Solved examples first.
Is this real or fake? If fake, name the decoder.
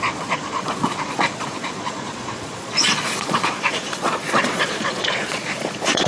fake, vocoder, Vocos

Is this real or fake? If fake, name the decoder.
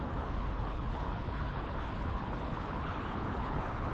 fake, codec, HILCodec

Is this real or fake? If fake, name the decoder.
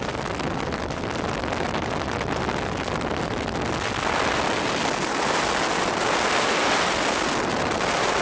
real